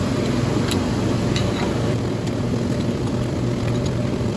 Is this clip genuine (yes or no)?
no